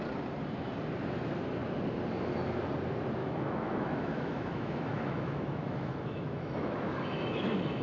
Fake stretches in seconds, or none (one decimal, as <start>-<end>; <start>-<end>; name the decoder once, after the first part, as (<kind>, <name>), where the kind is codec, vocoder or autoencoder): 3.2-7.8 (autoencoder, DAC-VAE)